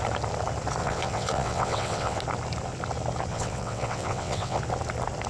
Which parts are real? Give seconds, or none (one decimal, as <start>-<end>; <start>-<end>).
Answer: 0.0-0.8; 2.2-3.3; 4.6-5.3